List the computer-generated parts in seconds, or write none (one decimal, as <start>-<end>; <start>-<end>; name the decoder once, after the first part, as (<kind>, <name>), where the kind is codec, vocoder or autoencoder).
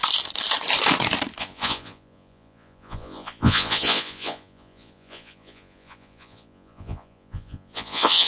1.4-8.3 (vocoder, Vocos)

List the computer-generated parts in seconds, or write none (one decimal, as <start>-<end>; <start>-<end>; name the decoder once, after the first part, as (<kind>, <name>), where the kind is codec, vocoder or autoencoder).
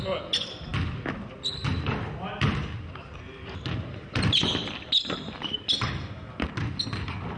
none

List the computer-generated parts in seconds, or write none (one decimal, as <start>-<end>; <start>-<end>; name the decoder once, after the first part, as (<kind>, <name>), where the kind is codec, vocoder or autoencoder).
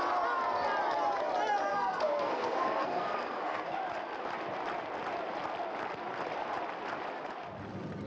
1.7-3.8 (codec, SNAC)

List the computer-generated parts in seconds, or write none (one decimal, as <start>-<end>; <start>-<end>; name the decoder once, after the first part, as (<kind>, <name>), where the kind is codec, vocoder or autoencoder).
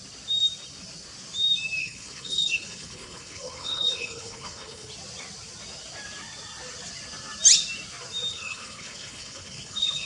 1.8-4.9 (codec, HILCodec); 8.3-10.1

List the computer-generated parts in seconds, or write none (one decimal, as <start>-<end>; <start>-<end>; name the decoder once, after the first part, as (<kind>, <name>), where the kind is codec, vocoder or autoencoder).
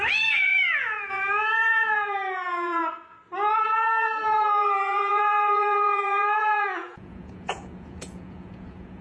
0.0-2.8 (vocoder, Vocos); 3.5-9.0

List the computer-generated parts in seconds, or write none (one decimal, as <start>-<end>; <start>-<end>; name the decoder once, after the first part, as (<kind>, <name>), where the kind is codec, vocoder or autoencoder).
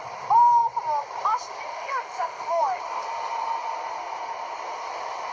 1.7-2.8 (autoencoder, DAC-VAE)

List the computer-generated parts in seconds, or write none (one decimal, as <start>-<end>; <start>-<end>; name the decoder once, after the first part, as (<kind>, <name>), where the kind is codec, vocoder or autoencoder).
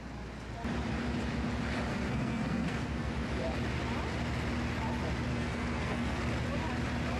1.9-3.1 (codec, SNAC); 5.3-6.2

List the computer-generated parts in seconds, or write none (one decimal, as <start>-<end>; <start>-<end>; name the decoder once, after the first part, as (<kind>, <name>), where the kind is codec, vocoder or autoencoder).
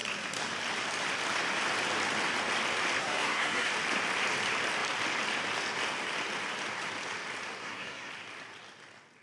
3.0-3.7 (codec, SNAC); 7.6-8.1